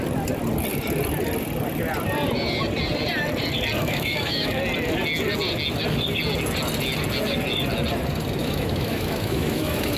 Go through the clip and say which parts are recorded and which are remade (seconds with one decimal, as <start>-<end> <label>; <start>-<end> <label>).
0.0-3.8 recorded; 3.8-4.6 remade; 4.6-8.4 recorded; 8.4-10.0 remade